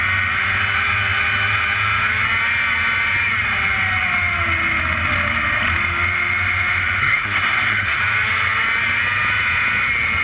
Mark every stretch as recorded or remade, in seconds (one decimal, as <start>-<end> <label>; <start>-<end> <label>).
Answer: 0.0-7.0 recorded; 7.0-8.0 remade; 8.0-10.2 recorded